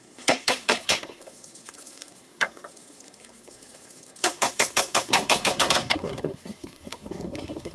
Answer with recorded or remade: remade